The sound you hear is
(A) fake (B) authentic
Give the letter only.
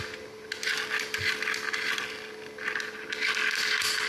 B